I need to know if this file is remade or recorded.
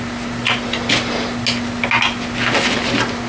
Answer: recorded